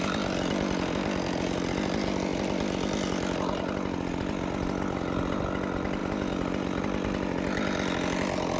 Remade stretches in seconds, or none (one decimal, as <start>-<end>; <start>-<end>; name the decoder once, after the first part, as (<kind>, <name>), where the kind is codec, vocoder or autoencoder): none